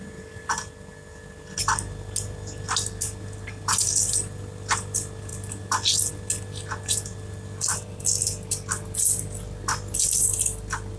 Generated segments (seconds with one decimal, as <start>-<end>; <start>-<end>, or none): none